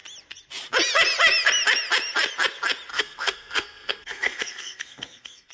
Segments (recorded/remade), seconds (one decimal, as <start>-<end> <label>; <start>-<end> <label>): 0.0-2.9 recorded; 2.9-5.5 remade